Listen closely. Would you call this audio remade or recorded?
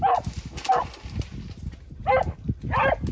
recorded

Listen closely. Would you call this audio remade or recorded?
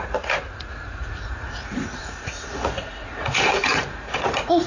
remade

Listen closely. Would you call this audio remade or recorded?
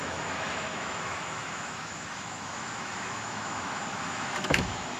remade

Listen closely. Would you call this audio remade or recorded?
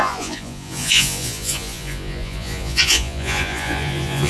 remade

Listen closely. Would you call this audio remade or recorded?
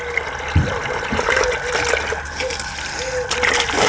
recorded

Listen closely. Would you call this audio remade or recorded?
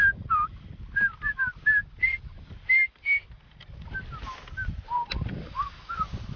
recorded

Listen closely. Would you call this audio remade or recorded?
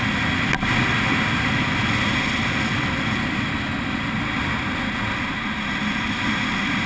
recorded